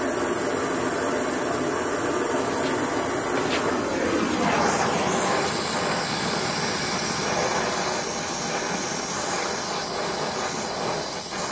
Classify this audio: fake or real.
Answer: real